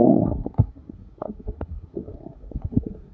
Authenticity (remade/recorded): remade